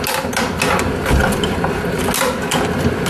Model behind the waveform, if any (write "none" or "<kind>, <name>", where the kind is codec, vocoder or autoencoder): none